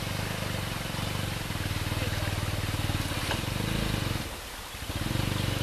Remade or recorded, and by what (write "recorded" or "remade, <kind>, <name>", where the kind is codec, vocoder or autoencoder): recorded